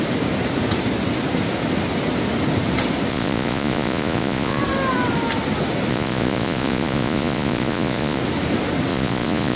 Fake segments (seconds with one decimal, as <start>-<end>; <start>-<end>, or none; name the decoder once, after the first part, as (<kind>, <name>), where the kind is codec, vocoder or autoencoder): 3.1-4.6 (vocoder, Vocos); 5.9-8.2; 8.9-9.6

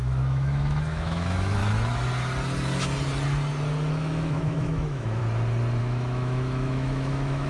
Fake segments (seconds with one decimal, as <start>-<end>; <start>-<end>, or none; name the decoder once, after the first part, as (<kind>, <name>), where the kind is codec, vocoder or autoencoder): 0.0-1.6 (autoencoder, DAC-VAE); 3.9-5.2; 5.8-7.5

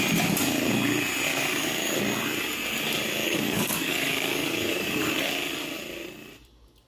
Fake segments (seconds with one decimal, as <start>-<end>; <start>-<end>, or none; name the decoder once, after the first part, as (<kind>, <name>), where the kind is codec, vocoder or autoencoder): 1.3-2.0 (codec, DAC); 3.2-5.1

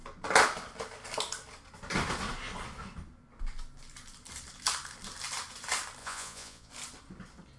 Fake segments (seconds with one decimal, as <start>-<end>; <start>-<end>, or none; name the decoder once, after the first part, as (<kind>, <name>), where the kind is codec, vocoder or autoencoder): 6.0-6.7 (vocoder, Vocos)

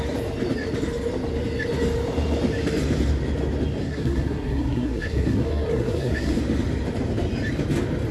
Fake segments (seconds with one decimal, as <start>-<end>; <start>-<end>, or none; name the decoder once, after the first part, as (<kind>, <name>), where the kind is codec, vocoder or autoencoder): 3.8-6.4 (codec, SNAC)

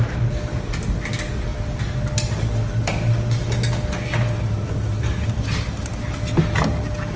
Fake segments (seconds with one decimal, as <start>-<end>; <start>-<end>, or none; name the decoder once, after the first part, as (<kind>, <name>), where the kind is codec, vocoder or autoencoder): none

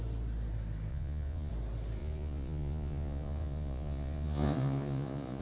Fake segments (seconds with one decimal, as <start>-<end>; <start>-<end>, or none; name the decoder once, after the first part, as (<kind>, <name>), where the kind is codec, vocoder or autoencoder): 0.9-1.5 (vocoder, Vocos); 2.0-5.4